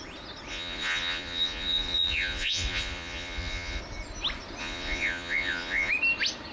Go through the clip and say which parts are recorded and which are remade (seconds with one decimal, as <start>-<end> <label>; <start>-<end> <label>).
0.0-0.5 recorded; 0.5-3.8 remade; 3.8-4.6 recorded; 4.6-5.9 remade; 5.9-6.5 recorded